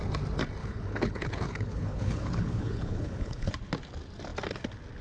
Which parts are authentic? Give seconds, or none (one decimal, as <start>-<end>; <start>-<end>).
0.0-0.6; 3.5-5.0